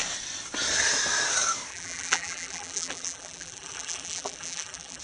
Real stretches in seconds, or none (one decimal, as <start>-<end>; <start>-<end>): 0.0-1.7